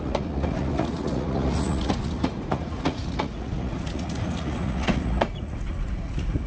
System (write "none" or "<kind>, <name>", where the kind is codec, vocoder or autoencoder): vocoder, Vocos